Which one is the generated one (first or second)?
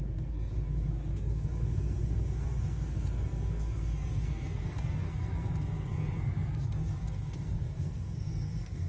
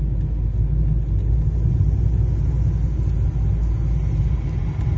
first